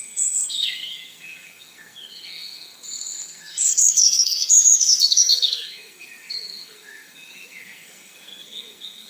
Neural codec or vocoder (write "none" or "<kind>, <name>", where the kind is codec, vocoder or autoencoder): codec, SNAC